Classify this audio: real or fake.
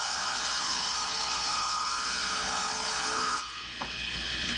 fake